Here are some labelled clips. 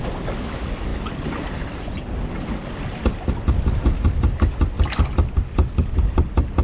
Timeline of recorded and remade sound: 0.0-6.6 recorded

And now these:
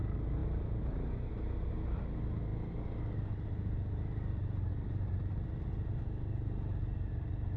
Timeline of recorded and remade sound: 0.0-7.6 recorded

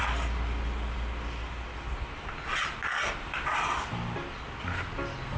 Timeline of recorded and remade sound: 0.0-5.4 recorded

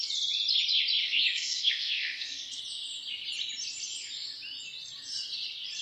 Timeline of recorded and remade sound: 0.0-1.0 recorded; 1.0-2.6 remade; 2.6-5.8 recorded

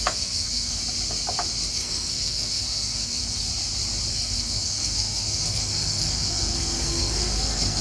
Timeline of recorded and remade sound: 0.0-0.8 remade; 0.8-1.7 recorded; 1.7-3.5 remade; 3.5-4.1 recorded; 4.1-7.8 remade

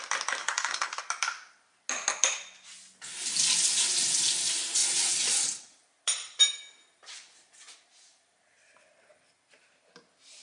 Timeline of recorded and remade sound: 0.0-0.4 recorded; 0.4-1.0 remade; 1.0-10.4 recorded

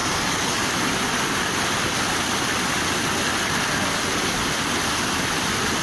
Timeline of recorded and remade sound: 0.0-5.8 recorded

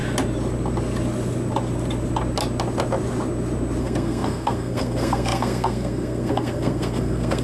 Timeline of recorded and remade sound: 0.0-3.8 recorded; 3.8-7.4 remade